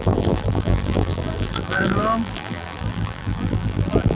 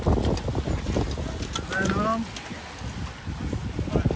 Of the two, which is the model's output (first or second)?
first